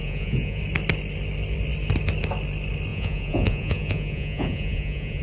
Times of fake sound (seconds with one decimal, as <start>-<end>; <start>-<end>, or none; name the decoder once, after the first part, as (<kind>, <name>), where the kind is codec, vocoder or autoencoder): 0.0-0.6 (vocoder, Vocos); 2.9-5.2